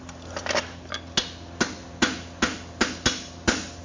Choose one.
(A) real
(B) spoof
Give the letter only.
A